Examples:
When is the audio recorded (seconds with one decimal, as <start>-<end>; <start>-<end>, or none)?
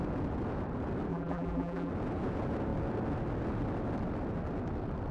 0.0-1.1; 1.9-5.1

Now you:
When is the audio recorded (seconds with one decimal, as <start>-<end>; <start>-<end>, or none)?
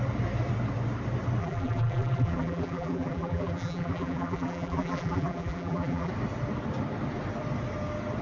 0.0-1.4; 6.1-8.2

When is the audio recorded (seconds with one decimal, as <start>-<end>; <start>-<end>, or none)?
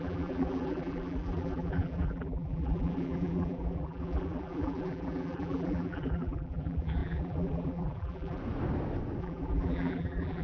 8.4-9.2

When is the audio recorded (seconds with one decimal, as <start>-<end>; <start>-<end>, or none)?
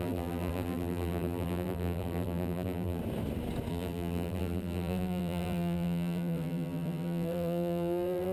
3.0-3.7